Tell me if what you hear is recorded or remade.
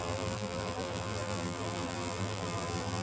remade